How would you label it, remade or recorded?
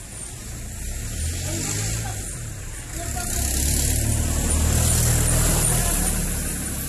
recorded